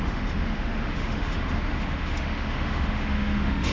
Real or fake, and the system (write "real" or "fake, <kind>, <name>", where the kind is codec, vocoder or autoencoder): fake, autoencoder, DAC-VAE